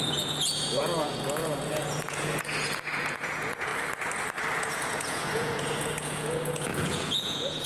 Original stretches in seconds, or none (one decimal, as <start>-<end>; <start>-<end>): 3.7-4.6